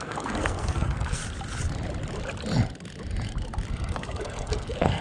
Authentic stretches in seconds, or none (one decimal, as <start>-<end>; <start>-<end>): 1.2-3.7